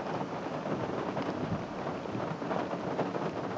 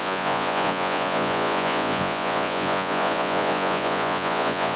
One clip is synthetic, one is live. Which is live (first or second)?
first